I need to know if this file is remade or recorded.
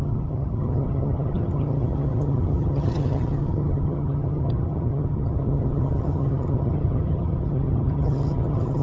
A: remade